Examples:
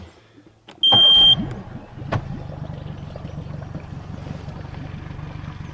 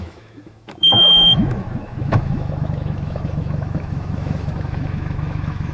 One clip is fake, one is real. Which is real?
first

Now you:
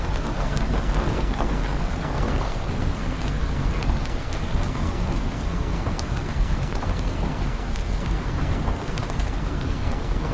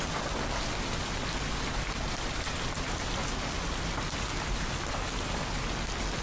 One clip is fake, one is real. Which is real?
second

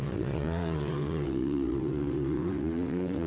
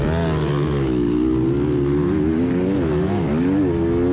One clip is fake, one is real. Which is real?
second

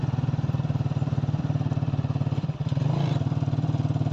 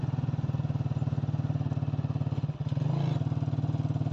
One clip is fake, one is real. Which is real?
second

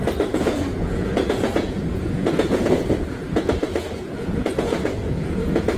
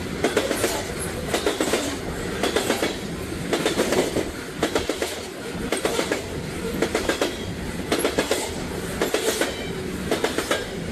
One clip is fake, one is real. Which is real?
second